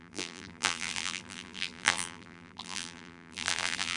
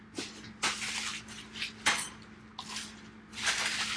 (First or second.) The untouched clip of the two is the second